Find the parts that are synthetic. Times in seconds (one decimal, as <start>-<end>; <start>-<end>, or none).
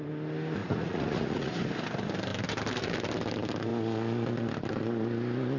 0.6-1.5